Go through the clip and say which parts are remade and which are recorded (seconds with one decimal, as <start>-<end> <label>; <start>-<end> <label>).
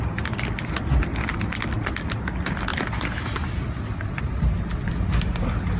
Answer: 0.0-5.8 recorded